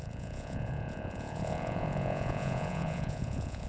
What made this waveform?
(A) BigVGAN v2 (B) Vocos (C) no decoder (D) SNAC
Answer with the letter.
B